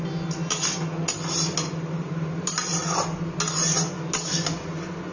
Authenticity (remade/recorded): recorded